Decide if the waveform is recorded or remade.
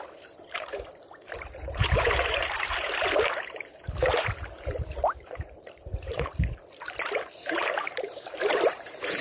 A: remade